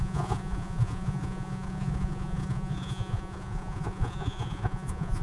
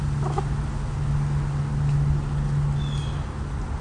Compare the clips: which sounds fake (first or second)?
first